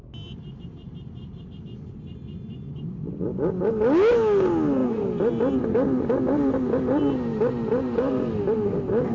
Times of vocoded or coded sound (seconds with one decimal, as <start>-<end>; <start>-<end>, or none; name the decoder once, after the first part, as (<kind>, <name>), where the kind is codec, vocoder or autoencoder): none